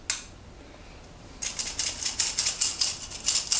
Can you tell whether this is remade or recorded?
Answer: recorded